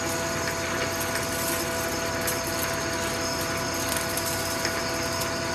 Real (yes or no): yes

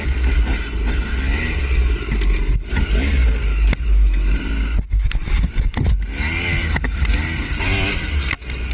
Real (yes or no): yes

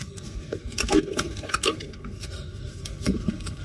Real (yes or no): no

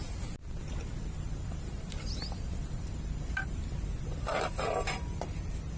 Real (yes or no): yes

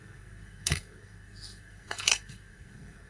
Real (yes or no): no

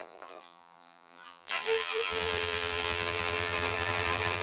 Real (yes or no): no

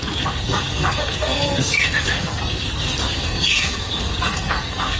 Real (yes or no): no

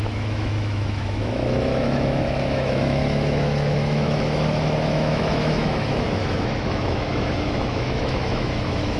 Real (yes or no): no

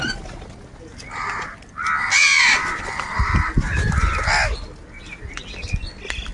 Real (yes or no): yes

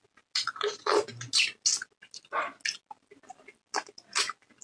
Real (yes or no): yes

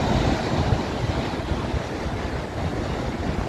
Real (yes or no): yes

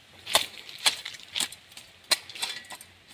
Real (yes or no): yes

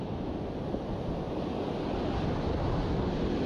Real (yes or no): yes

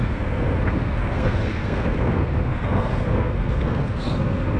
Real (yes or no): no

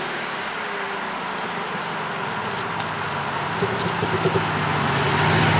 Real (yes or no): yes